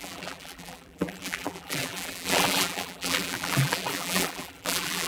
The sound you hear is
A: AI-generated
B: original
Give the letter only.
A